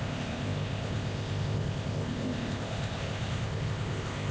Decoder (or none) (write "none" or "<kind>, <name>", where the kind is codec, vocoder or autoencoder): codec, ZipCodec